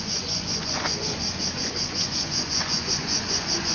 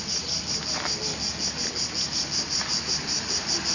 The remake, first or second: first